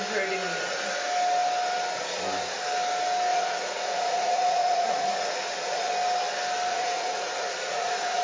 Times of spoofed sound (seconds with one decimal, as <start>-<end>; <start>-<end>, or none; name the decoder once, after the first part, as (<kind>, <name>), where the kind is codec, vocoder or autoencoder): 3.3-5.9 (vocoder, Vocos); 6.7-8.2